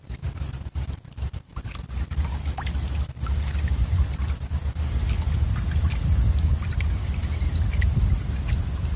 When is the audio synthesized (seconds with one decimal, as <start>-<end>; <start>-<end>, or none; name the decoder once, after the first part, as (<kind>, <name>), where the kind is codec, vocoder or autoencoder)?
none